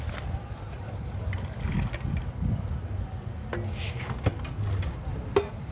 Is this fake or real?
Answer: real